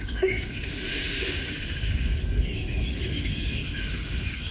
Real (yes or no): no